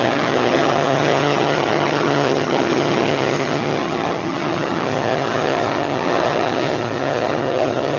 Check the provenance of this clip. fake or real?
fake